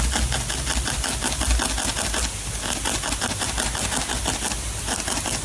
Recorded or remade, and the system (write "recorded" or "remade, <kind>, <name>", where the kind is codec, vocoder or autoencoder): recorded